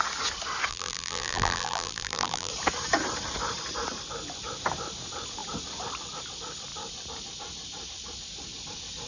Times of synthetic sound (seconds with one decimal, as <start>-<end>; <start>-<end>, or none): 0.7-2.5